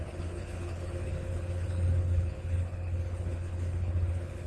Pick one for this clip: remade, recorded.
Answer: remade